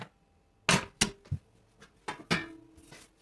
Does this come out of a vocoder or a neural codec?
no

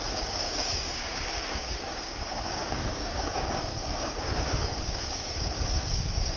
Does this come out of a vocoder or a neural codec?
yes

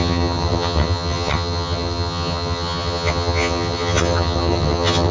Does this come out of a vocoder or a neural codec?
yes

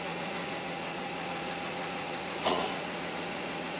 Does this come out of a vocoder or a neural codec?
yes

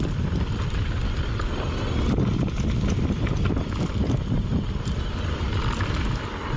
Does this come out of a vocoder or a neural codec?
no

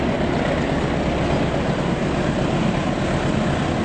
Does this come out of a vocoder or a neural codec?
no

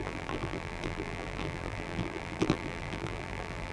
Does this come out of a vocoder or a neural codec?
yes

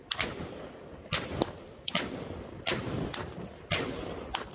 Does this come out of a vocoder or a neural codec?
no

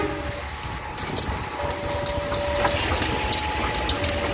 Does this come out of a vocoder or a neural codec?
no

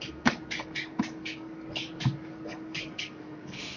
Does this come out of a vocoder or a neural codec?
yes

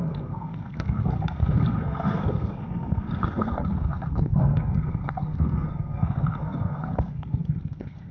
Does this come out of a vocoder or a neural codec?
yes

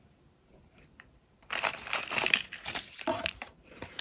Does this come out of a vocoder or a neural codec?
yes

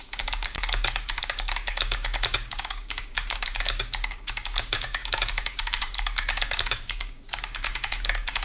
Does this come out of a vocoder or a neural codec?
yes